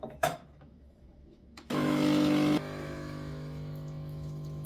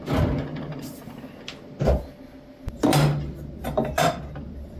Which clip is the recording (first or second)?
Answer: second